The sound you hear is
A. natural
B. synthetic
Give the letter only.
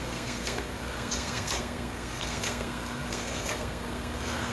B